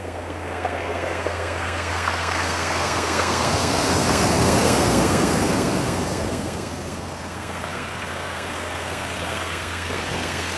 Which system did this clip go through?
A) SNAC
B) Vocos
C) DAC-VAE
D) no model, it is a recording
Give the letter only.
A